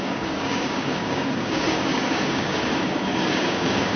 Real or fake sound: fake